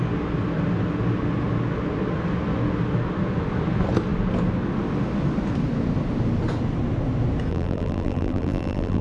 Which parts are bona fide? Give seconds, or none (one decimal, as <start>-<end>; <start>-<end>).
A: 0.0-7.5